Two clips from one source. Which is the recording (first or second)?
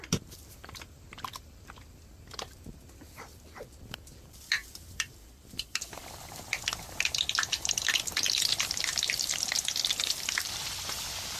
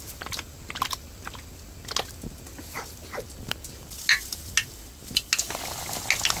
second